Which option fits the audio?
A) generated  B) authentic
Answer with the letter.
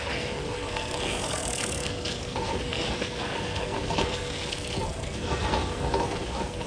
A